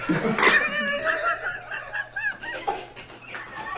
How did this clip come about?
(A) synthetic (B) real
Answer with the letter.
B